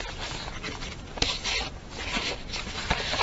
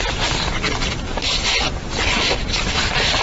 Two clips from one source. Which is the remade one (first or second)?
second